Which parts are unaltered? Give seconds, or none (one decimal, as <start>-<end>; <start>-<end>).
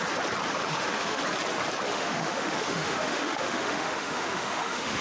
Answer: 0.0-0.6; 1.2-1.9